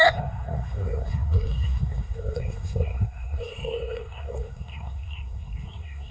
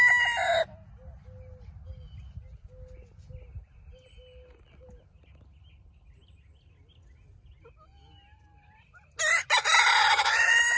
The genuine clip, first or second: second